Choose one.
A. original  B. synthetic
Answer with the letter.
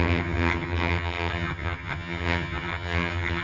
B